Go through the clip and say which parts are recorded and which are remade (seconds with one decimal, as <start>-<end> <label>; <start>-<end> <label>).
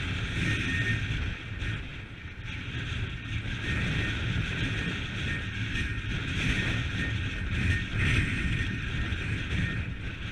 0.0-10.3 recorded